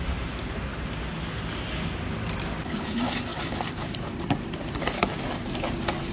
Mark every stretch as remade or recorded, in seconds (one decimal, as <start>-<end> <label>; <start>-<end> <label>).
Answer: 0.0-3.3 recorded; 3.3-6.1 remade